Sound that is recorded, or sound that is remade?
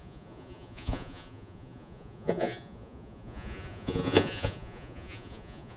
remade